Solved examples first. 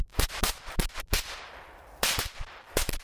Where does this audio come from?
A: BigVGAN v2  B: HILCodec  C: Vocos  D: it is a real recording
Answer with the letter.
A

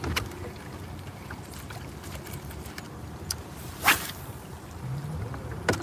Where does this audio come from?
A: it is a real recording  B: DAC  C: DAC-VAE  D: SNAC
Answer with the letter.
A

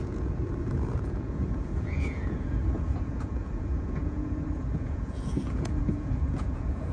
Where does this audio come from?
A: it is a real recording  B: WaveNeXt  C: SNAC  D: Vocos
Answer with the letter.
D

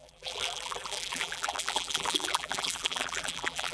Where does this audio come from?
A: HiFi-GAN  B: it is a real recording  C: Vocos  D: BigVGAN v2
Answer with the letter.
D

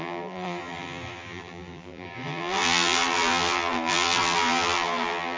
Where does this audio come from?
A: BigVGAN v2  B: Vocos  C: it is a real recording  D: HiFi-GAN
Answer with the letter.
A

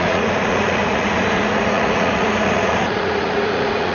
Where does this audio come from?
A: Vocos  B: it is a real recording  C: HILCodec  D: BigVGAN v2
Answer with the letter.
A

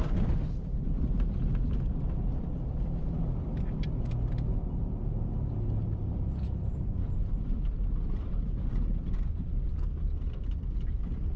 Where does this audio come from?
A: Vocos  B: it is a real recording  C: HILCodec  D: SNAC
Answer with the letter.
B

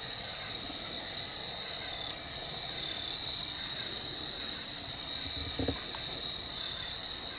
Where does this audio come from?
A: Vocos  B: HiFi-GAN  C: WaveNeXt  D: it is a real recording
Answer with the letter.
D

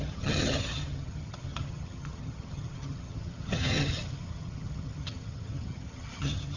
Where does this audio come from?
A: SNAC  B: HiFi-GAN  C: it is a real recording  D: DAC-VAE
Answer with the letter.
B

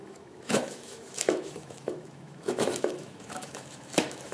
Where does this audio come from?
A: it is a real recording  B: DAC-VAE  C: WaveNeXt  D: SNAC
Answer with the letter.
B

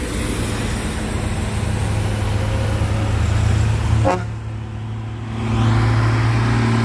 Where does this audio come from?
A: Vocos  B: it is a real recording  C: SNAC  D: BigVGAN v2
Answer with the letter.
B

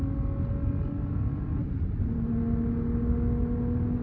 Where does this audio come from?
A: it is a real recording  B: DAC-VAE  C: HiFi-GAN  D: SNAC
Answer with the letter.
A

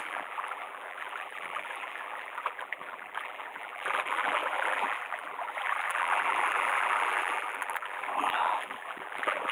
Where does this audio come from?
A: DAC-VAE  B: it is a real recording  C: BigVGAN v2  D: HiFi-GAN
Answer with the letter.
C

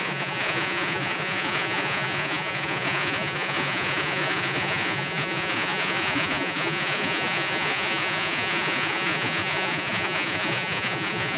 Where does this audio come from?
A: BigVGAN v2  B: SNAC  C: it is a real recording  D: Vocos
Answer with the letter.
D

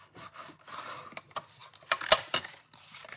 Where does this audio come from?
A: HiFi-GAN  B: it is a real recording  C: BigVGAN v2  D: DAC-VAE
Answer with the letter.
B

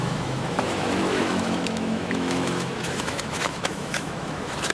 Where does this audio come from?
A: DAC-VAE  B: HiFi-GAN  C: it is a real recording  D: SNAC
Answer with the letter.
A